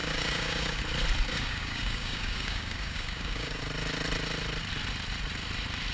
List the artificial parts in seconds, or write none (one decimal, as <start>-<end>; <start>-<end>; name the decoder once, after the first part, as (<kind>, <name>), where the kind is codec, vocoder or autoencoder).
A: 0.0-0.8 (codec, DAC); 1.3-3.6